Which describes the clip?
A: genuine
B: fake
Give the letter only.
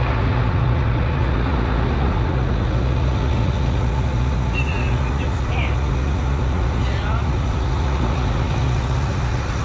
B